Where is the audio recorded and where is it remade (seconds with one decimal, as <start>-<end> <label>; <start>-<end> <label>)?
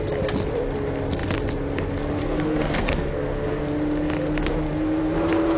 0.0-2.2 recorded; 2.2-3.6 remade; 3.6-5.6 recorded